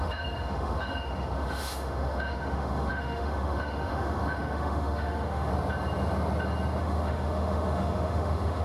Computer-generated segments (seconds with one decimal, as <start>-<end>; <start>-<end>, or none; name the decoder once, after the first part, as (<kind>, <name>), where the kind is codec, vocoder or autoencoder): 0.0-5.5 (autoencoder, DAC-VAE); 6.8-8.6